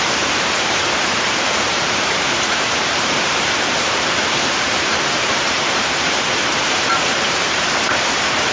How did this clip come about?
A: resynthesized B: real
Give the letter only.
A